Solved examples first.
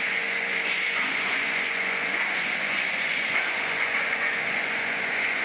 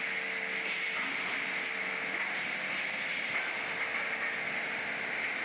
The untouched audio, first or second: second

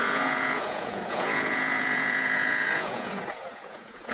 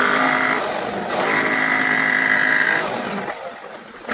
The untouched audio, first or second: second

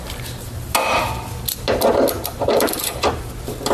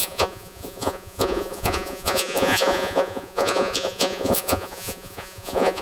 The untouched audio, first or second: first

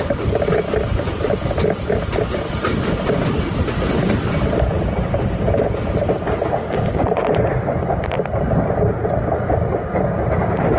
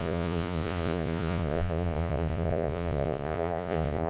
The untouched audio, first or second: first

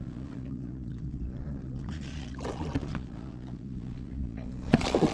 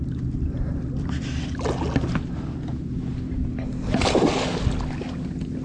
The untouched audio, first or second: second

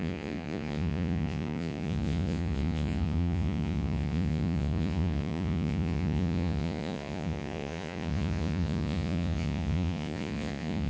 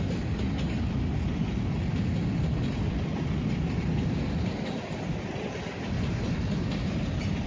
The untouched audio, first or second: second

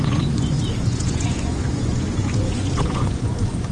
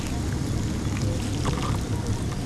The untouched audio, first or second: second